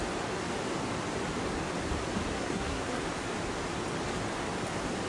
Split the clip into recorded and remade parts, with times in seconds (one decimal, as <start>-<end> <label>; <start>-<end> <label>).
0.0-2.3 recorded; 2.3-3.0 remade; 3.0-5.1 recorded